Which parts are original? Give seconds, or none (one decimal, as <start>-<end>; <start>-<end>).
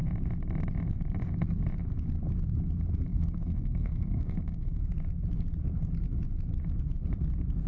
0.0-3.1; 4.8-7.7